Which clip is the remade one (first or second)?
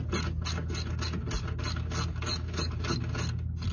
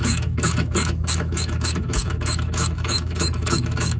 second